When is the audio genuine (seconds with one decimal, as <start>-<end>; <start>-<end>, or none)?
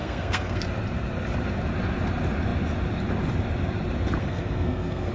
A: 0.6-4.2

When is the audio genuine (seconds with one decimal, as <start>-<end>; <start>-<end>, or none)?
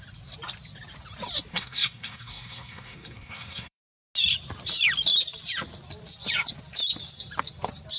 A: 0.0-1.5; 3.8-8.0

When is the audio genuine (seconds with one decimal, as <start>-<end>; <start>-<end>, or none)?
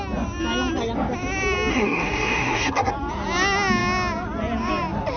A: 0.0-1.7; 2.9-5.2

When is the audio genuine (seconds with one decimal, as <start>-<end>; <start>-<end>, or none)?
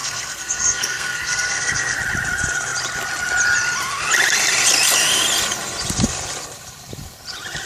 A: 2.0-7.7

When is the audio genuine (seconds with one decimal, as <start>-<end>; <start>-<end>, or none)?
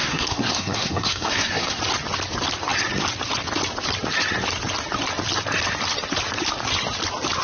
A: 1.8-7.4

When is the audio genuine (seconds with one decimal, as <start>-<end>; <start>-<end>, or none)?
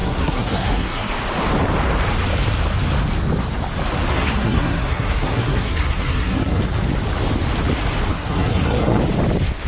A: 1.1-4.1; 6.6-8.1; 9.0-9.7